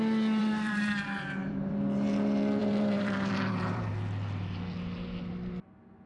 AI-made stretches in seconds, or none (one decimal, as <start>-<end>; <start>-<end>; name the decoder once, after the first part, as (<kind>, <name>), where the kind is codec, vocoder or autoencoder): 0.4-1.7 (vocoder, BigVGAN v2); 2.6-3.9